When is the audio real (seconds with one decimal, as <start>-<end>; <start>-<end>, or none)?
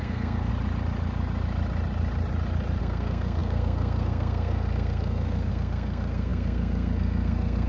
0.5-2.8